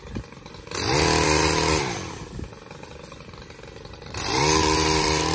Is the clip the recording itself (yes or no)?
yes